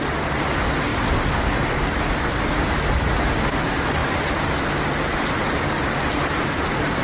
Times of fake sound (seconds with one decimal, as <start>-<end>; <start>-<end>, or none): none